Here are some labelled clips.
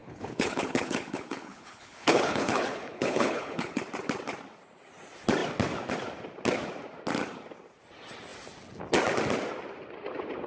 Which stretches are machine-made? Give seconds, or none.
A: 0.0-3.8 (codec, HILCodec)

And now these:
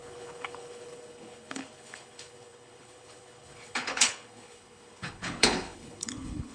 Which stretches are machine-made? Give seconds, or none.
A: 0.0-6.5 (codec, HILCodec)

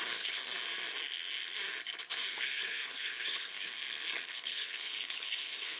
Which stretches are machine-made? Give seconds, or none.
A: 0.0-0.4 (codec, HILCodec); 2.3-3.7; 4.3-5.8

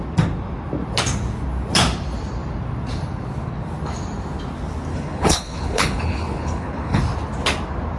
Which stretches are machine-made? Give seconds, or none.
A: 4.9-7.0 (codec, HILCodec)

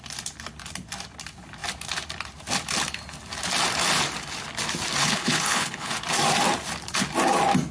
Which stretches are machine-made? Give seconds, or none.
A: 5.0-5.9 (codec, HILCodec)

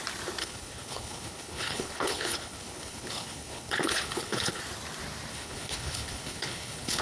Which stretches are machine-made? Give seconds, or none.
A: 0.4-4.6 (codec, HILCodec); 5.3-7.0